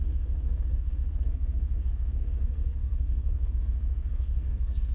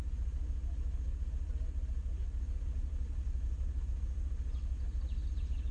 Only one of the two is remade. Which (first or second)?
first